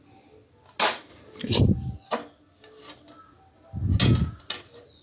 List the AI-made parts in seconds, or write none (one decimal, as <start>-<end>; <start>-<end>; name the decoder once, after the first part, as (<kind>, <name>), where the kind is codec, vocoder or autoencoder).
none